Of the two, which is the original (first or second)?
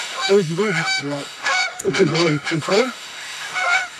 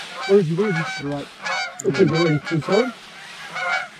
second